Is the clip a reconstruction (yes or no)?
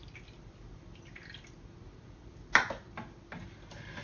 no